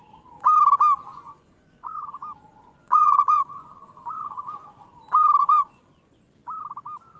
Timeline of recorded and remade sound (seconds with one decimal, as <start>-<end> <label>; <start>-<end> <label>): 0.0-1.1 recorded; 1.1-2.1 remade; 2.1-2.5 recorded; 2.5-5.0 remade; 5.0-5.4 recorded; 5.4-6.3 remade; 6.3-7.2 recorded